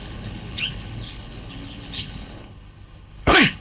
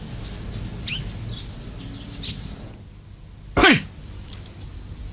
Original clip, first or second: second